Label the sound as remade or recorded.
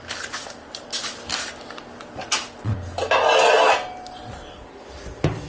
recorded